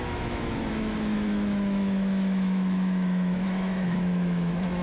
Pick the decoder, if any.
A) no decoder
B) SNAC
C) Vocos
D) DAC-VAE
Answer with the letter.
D